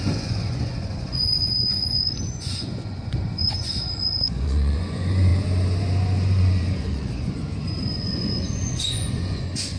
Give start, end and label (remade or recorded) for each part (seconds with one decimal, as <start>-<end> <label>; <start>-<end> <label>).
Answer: 0.0-5.3 remade; 5.3-5.8 recorded; 5.8-9.8 remade